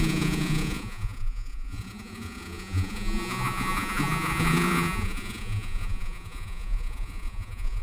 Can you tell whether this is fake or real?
fake